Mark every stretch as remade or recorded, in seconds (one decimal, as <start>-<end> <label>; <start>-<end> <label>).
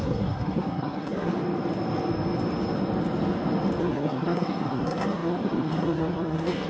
0.0-1.3 remade; 1.3-3.8 recorded; 3.8-6.7 remade